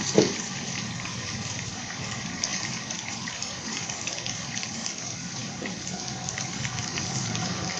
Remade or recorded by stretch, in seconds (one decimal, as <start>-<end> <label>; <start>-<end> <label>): 0.0-7.8 remade